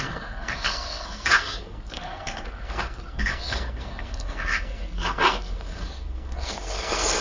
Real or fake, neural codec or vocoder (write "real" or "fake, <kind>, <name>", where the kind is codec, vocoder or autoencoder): fake, codec, SNAC